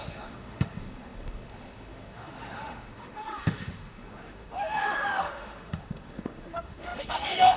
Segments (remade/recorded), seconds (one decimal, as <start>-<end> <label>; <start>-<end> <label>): 0.0-7.6 remade